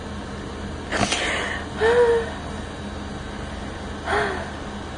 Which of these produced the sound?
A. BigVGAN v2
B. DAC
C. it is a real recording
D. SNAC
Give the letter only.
C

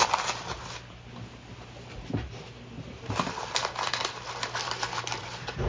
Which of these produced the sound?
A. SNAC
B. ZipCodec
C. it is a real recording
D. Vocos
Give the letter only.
C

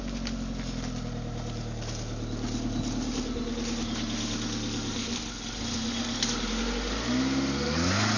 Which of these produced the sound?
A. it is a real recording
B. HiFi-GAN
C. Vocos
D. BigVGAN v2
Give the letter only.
A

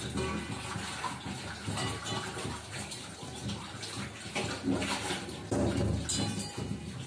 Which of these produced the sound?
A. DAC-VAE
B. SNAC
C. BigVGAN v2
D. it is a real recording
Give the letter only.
D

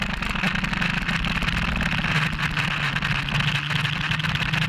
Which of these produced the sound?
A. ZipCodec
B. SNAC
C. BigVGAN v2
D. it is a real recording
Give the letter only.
D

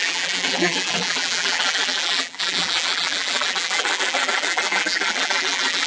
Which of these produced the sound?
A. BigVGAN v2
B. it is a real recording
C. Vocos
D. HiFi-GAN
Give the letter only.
A